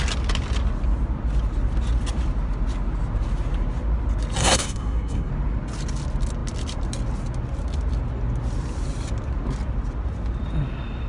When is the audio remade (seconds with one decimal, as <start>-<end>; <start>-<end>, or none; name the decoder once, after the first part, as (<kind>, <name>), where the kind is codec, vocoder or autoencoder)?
4.4-5.3 (codec, SNAC)